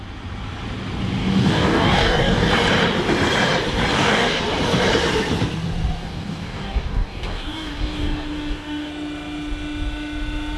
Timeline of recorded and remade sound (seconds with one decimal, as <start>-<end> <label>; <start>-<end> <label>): 0.0-1.2 recorded; 1.2-2.5 remade; 2.5-3.9 recorded; 3.9-4.4 remade; 4.4-6.0 recorded; 6.0-8.9 remade; 8.9-10.6 recorded